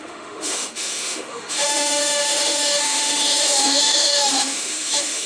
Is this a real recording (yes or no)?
no